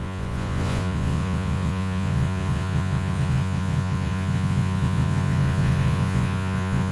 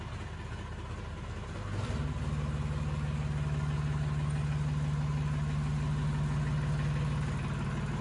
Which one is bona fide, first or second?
second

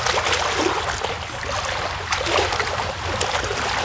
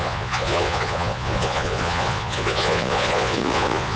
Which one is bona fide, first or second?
first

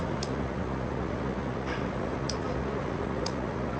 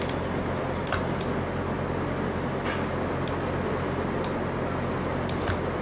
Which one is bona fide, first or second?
second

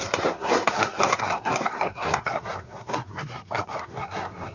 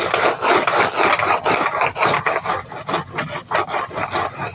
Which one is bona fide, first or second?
second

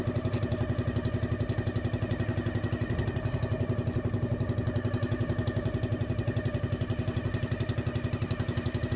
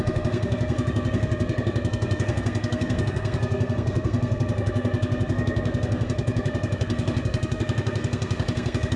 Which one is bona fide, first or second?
first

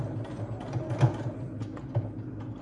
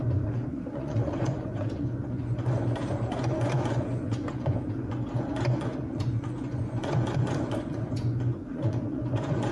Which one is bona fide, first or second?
first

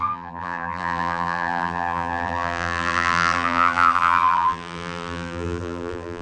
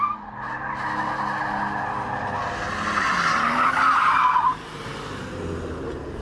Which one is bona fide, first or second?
second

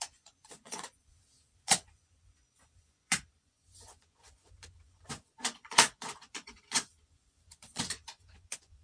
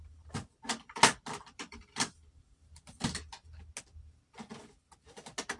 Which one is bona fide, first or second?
second